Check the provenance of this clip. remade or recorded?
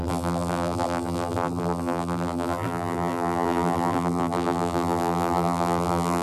remade